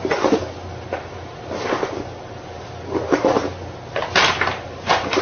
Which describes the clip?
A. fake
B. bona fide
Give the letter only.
B